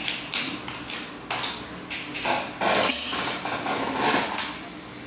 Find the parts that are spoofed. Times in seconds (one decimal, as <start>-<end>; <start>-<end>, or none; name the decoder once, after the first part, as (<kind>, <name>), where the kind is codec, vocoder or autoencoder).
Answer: none